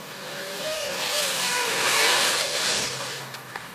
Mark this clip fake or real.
fake